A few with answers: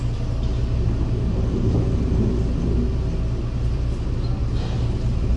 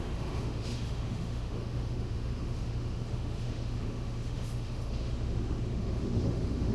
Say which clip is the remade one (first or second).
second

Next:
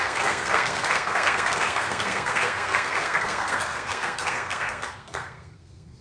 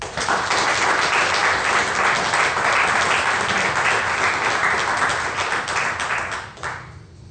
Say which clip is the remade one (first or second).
first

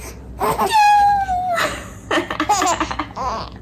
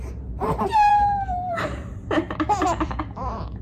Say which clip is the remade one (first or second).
second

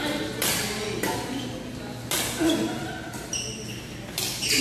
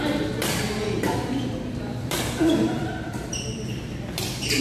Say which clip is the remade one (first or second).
second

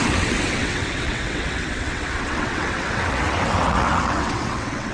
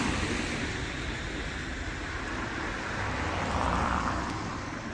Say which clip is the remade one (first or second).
first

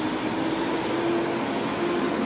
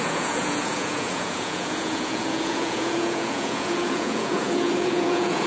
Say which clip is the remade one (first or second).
second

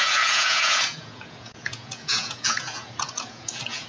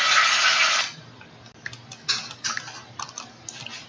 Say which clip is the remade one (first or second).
first